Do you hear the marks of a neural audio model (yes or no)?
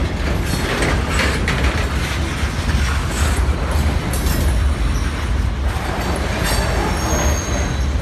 no